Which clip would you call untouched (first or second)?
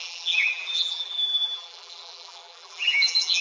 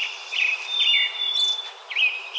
second